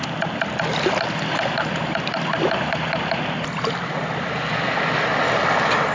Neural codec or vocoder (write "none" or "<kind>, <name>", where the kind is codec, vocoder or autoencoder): none